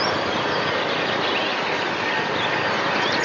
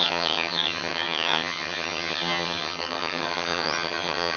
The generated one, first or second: second